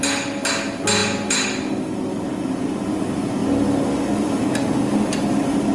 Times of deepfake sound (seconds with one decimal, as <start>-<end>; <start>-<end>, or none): none